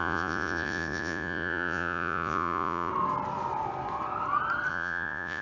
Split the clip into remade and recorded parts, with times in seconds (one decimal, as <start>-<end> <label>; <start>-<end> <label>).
0.0-2.9 remade; 2.9-4.7 recorded; 4.7-5.4 remade